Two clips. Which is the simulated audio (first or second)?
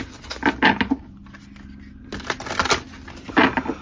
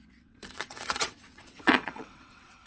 second